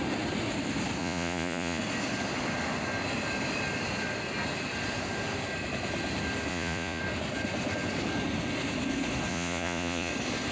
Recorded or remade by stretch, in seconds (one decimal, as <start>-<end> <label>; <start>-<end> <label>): 0.0-1.0 recorded; 1.0-1.8 remade; 1.8-6.5 recorded; 6.5-7.0 remade; 7.0-9.3 recorded; 9.3-10.1 remade; 10.1-10.5 recorded